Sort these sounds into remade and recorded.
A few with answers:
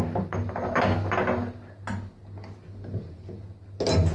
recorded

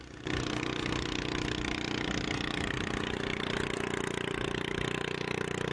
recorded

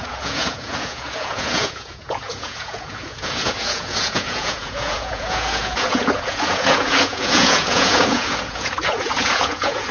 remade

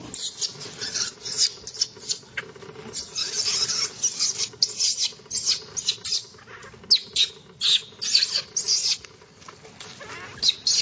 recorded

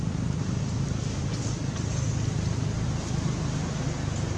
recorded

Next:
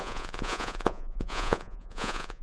remade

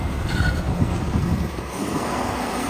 remade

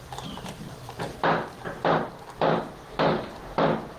remade